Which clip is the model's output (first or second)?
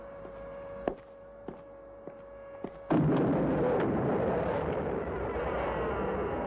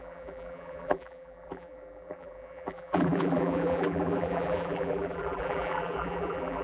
second